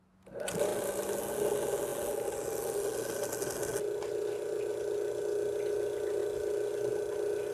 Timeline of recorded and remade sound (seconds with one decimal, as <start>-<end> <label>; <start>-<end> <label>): 0.0-7.5 recorded